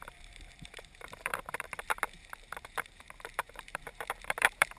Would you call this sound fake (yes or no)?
yes